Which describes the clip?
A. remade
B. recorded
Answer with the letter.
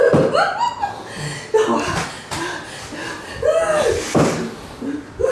B